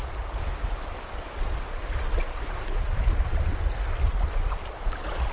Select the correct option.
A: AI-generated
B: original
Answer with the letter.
B